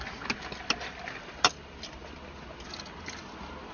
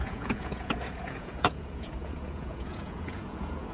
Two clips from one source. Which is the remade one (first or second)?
second